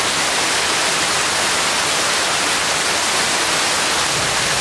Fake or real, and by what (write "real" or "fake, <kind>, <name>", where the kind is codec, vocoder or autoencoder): real